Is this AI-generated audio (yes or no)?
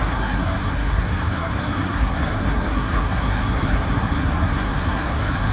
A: yes